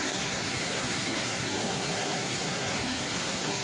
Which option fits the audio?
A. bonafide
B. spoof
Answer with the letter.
B